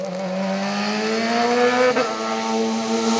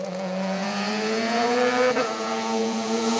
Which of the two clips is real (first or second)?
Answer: first